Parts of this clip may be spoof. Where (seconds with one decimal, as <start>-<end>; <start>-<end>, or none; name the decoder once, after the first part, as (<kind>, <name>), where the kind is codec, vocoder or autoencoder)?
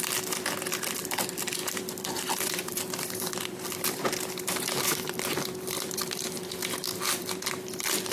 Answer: 1.6-4.3 (vocoder, BigVGAN v2); 6.9-8.1